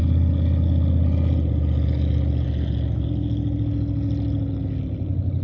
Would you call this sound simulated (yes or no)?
no